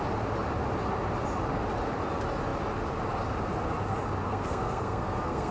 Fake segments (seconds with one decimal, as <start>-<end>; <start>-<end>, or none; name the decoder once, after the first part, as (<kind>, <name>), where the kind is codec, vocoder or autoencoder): 4.2-5.5 (codec, SNAC)